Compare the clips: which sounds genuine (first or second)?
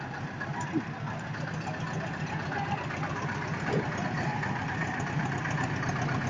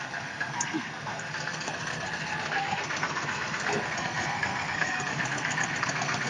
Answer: first